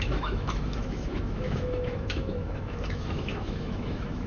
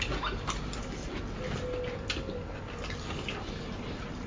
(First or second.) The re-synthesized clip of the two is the first